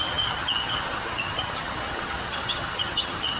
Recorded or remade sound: remade